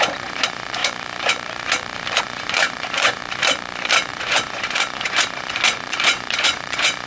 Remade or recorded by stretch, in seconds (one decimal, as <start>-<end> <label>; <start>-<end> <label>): 0.0-0.8 remade; 0.8-2.2 recorded; 2.2-3.2 remade; 3.2-4.1 recorded; 4.1-7.1 remade